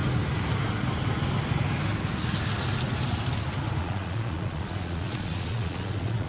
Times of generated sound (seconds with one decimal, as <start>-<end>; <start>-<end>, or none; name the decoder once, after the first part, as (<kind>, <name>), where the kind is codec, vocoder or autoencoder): 3.8-6.3 (vocoder, Vocos)

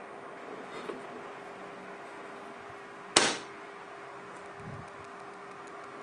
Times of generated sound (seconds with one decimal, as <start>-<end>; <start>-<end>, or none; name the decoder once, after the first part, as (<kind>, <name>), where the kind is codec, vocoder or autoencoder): none

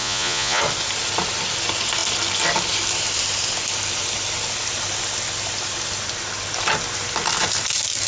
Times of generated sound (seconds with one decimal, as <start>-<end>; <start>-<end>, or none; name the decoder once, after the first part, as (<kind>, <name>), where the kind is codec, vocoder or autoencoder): 0.0-0.6 (vocoder, Vocos)

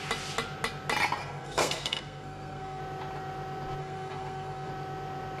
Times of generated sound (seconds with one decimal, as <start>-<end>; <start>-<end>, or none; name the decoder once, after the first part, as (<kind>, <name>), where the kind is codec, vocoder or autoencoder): 1.2-2.8 (codec, SNAC); 3.8-4.7

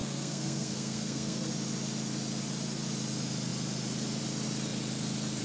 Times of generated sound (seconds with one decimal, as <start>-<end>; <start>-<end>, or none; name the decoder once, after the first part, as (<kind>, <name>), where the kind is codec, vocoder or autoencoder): 0.0-1.5 (codec, SNAC)

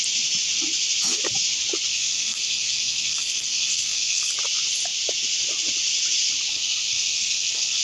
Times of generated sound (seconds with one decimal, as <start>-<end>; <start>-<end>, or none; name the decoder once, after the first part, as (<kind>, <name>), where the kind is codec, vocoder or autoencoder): 1.9-4.3 (codec, SNAC); 6.5-7.8

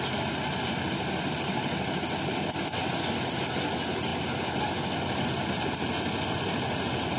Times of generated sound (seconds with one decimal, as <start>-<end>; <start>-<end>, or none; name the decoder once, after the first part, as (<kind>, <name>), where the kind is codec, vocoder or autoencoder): none